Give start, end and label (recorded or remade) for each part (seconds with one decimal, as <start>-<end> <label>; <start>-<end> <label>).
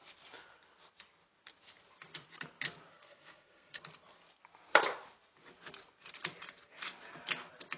0.0-2.9 recorded; 2.9-3.8 remade; 3.8-7.8 recorded